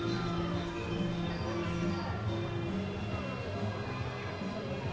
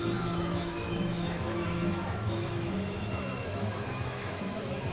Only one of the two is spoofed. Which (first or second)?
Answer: second